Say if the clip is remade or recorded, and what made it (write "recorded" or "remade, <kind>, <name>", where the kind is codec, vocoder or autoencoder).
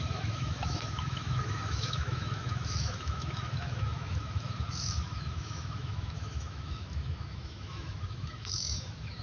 remade, autoencoder, DAC-VAE